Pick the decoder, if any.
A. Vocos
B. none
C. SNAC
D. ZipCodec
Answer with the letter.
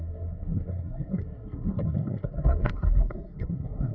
C